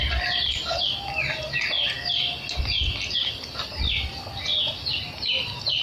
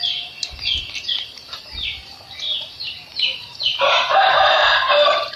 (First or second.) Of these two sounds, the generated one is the second